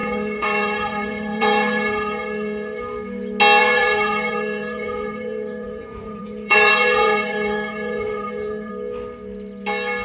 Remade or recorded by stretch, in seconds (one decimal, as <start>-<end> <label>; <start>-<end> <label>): 0.0-2.8 remade; 2.8-3.6 recorded; 3.6-8.7 remade; 8.7-10.0 recorded